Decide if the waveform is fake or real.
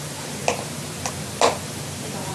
real